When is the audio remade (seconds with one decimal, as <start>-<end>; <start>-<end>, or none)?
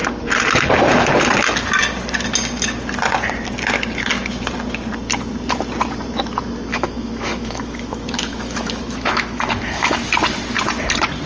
6.7-10.1